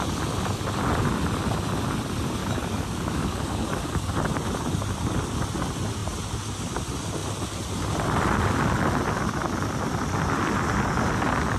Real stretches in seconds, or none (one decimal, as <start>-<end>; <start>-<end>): 0.0-2.4; 4.1-11.6